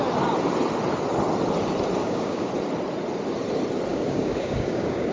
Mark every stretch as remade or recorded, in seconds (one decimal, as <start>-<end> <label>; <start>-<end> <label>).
0.0-2.0 recorded; 2.0-2.5 remade; 2.5-3.9 recorded; 3.9-5.1 remade